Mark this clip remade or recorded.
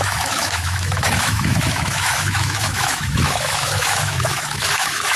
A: remade